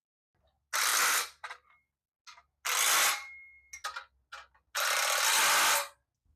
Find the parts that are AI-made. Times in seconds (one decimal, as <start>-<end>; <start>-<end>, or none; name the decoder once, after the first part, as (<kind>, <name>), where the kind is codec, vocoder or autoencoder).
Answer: 0.9-2.1 (vocoder, BigVGAN v2)